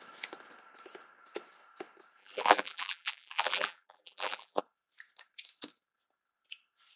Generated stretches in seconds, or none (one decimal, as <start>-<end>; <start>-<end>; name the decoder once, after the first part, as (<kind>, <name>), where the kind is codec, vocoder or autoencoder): 2.2-4.6 (vocoder, BigVGAN v2)